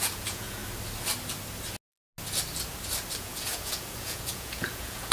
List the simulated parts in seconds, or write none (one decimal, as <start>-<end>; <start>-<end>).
0.0-0.6; 3.2-5.1